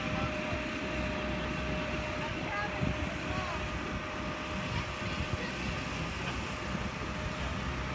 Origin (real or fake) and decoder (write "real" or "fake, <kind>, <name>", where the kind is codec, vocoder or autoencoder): real